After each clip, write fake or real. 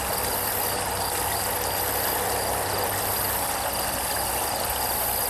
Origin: real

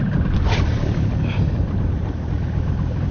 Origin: real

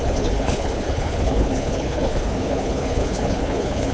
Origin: fake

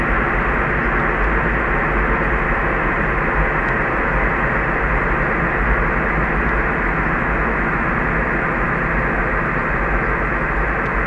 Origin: real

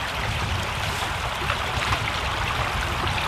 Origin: real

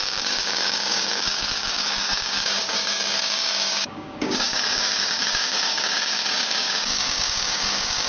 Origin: fake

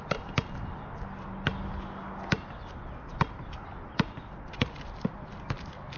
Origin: real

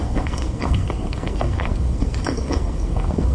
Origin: fake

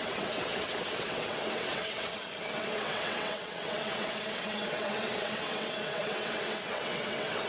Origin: fake